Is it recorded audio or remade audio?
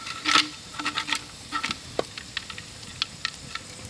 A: recorded